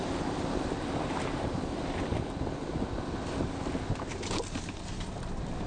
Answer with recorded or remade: recorded